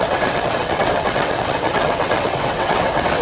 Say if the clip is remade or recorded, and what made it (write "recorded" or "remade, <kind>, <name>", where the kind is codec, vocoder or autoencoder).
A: remade, vocoder, WaveNeXt